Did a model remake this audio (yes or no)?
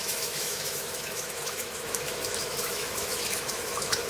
yes